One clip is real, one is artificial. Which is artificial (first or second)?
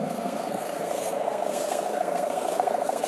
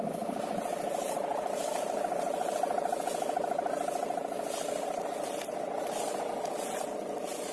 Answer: first